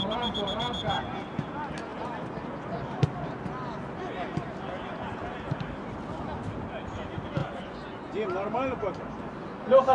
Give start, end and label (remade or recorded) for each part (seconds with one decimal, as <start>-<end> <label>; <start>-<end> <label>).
0.0-7.4 recorded; 7.4-8.1 remade; 8.1-9.9 recorded